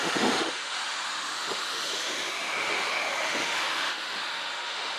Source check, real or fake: fake